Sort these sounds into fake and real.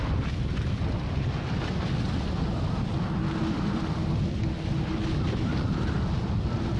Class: real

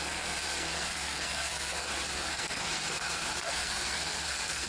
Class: fake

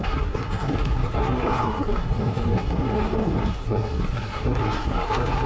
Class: fake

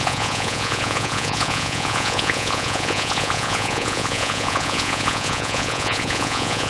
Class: fake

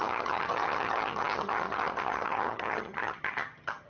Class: fake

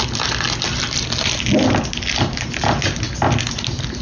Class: real